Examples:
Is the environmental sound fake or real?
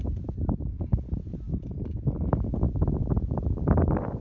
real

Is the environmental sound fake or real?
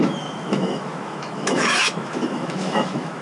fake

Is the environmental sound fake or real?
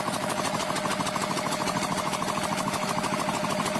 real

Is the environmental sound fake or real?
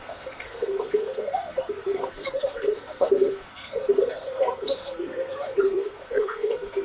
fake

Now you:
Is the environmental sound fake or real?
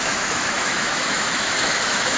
fake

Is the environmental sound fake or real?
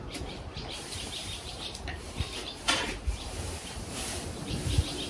fake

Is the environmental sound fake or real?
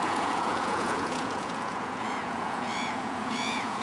fake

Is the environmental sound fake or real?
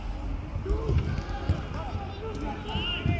real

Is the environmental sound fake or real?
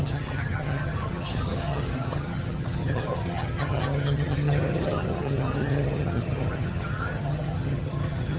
fake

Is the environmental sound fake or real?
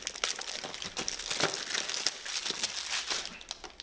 real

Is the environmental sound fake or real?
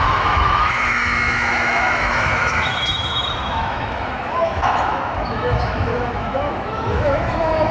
fake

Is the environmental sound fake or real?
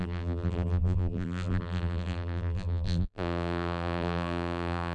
fake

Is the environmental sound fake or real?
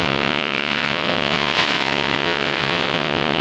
fake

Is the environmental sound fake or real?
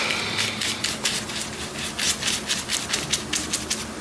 real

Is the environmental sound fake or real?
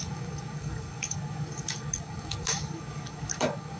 fake